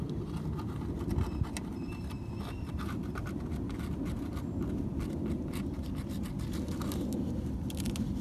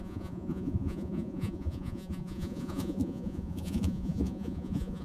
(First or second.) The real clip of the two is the first